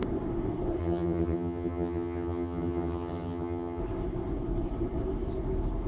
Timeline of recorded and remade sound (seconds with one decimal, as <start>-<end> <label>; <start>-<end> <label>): 0.0-0.8 recorded; 0.8-3.8 remade; 3.8-5.9 recorded